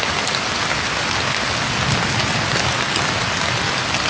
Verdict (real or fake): real